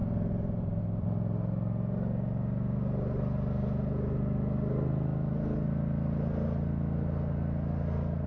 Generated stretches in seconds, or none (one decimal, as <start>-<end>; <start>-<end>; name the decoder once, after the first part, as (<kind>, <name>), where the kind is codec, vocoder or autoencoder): 0.0-0.8 (vocoder, BigVGAN v2)